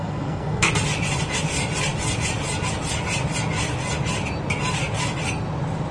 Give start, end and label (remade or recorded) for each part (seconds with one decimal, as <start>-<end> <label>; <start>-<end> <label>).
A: 0.0-0.7 remade; 0.7-5.9 recorded